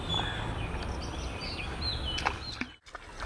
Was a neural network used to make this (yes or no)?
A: no